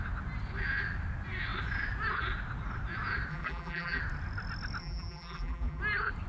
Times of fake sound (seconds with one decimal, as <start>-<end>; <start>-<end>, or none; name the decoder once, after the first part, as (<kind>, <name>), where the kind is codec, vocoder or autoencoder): 3.3-4.0 (vocoder, BigVGAN v2); 4.8-5.8